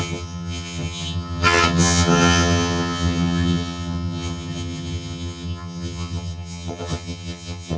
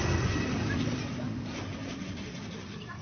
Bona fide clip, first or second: second